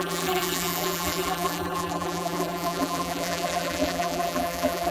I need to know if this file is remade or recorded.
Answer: remade